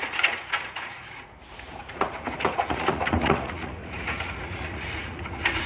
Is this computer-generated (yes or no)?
yes